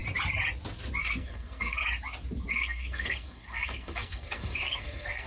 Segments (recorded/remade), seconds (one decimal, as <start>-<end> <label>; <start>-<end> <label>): 0.0-1.0 recorded; 1.0-1.8 remade; 1.8-2.5 recorded; 2.5-5.3 remade